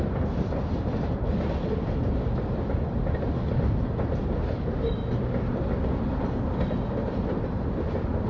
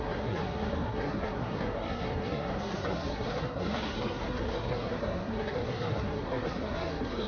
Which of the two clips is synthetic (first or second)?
second